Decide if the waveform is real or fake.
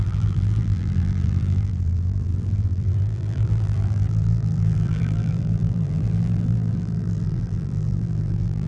fake